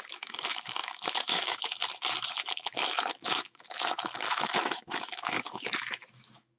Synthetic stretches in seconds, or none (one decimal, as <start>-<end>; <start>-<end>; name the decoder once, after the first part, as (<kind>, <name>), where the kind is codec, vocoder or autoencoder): 0.0-1.8 (autoencoder, DAC-VAE); 2.3-6.6